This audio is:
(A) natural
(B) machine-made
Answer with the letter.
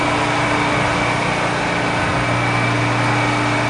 A